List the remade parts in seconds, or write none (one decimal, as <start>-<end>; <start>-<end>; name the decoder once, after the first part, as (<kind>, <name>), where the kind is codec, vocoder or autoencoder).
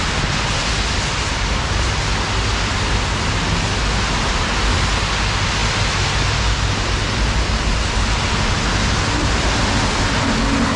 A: none